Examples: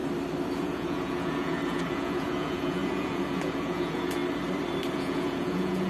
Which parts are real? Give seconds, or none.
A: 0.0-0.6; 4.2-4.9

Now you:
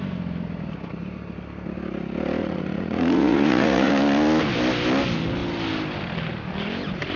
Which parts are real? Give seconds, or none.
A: 0.0-2.4; 3.9-7.2

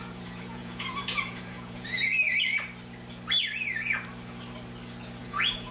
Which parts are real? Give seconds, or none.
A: 2.1-5.2